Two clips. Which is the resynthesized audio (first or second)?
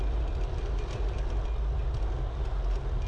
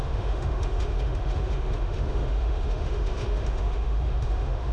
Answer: second